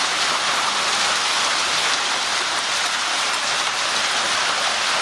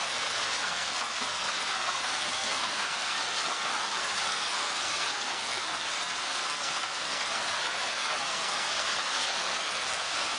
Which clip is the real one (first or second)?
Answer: first